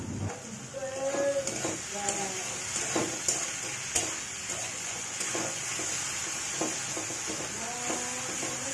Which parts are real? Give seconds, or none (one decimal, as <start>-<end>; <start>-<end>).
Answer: 0.0-4.6; 5.6-8.7

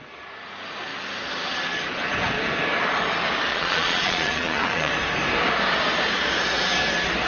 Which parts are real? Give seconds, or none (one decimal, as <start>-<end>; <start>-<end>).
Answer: 0.0-3.5; 4.9-7.3

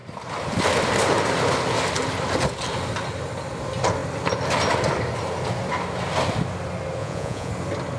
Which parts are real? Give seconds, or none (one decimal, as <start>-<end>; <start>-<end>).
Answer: 0.0-7.0; 7.5-8.0

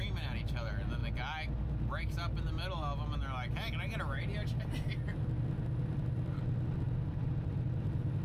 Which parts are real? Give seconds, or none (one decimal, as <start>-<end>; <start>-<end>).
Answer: 0.0-8.2

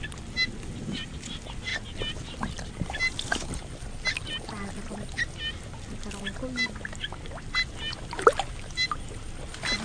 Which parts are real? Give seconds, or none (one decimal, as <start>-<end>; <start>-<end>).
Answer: 0.0-9.8

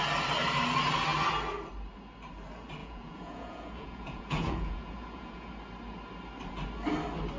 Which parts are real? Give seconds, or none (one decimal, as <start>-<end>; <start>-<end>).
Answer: 0.0-2.8; 5.5-7.4

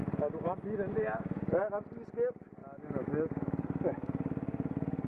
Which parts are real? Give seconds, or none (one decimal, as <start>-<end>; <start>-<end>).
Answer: 0.0-5.1

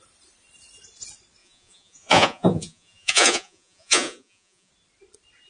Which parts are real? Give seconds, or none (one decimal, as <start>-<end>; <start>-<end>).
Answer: 0.0-1.4; 4.7-5.5